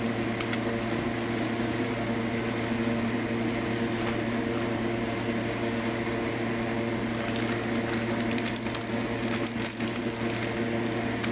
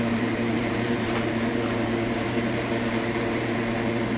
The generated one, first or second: second